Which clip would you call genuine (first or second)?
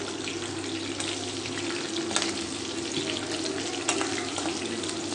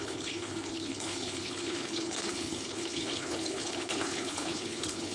first